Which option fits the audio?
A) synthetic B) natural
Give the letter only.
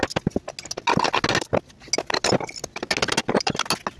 B